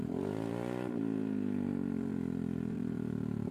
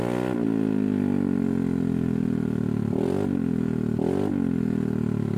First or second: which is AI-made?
first